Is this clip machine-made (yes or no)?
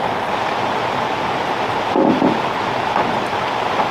no